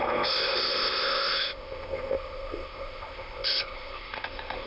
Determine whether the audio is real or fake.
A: fake